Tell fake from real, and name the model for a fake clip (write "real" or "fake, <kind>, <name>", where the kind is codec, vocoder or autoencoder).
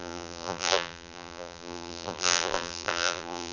fake, vocoder, BigVGAN v2